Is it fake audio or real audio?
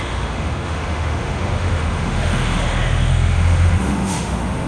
fake